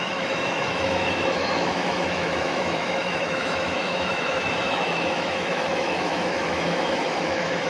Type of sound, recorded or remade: remade